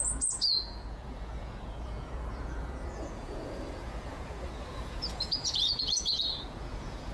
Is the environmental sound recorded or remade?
remade